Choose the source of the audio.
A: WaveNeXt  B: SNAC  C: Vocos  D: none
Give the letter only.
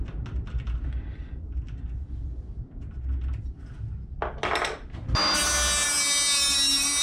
D